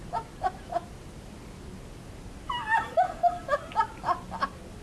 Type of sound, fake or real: real